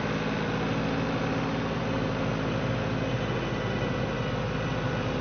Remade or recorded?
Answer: recorded